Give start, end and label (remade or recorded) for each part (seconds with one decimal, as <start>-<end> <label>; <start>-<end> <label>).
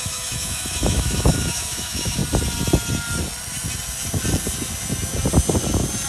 0.0-2.2 remade; 2.2-6.1 recorded